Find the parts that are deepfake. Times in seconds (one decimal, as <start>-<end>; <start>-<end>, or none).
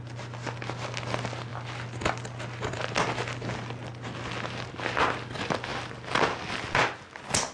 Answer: none